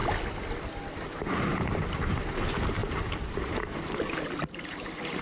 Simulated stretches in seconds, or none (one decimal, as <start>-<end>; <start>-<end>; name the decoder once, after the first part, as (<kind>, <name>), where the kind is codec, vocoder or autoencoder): 1.6-2.8 (vocoder, BigVGAN v2); 4.6-5.2